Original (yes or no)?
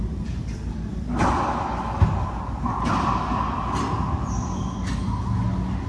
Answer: yes